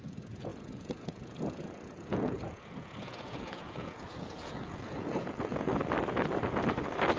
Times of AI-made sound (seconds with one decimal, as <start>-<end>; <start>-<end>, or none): 0.0-5.7